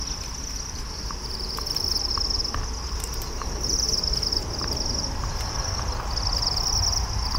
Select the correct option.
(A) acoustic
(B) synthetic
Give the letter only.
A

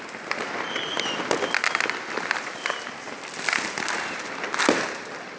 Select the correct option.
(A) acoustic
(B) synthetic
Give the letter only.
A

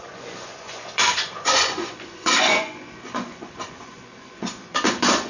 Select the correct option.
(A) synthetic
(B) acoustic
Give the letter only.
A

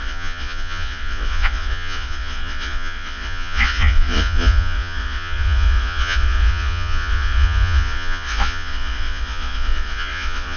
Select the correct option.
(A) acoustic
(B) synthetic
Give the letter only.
B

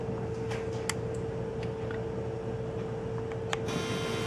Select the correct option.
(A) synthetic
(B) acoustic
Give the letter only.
B